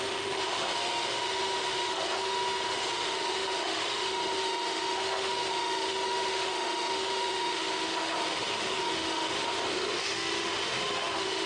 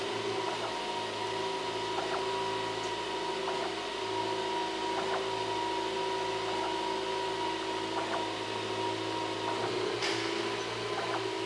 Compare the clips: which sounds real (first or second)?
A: second